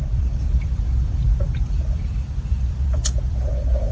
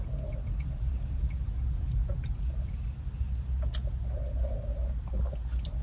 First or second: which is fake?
first